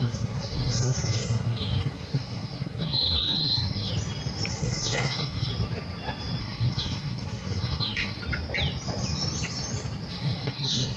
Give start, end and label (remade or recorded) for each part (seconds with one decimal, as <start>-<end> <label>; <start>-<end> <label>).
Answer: 0.0-3.9 remade; 3.9-4.5 recorded; 4.5-5.5 remade; 5.5-6.4 recorded; 6.4-8.2 remade; 8.2-10.1 recorded; 10.1-11.0 remade